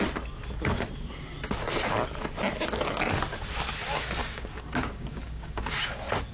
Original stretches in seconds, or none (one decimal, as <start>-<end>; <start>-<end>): 0.0-4.2; 5.8-6.3